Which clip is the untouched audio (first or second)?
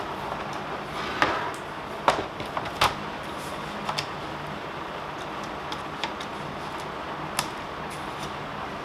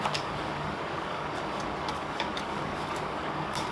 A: first